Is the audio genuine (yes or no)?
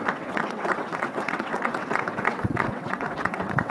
no